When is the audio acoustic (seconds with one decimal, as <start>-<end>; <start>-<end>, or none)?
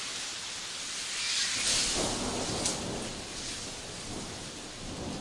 0.0-5.2